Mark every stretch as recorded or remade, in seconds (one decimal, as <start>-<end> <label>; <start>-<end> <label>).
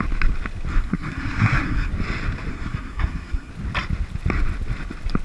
0.0-0.7 recorded; 0.7-1.9 remade; 1.9-2.5 recorded; 2.5-3.5 remade; 3.5-5.2 recorded